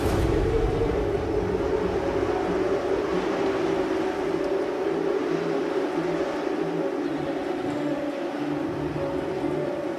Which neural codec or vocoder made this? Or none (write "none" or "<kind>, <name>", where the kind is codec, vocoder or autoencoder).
none